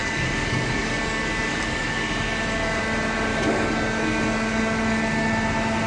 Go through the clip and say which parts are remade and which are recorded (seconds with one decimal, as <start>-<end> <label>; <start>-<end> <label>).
0.0-2.1 remade; 2.1-3.3 recorded; 3.3-4.8 remade; 4.8-5.9 recorded